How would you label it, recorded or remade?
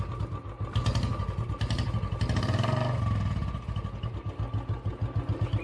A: recorded